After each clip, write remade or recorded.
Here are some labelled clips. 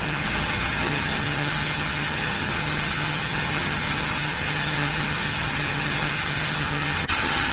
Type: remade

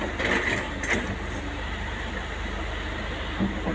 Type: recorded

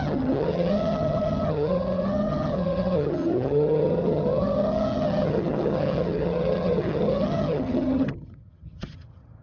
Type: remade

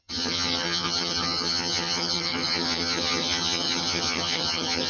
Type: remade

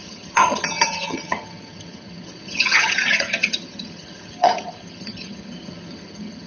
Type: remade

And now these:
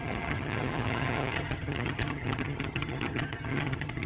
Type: remade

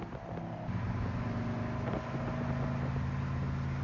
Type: recorded